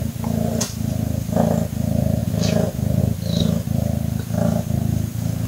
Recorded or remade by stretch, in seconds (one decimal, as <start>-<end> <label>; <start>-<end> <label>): 0.0-5.5 recorded